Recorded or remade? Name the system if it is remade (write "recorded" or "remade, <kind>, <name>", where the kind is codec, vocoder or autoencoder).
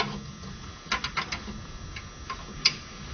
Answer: recorded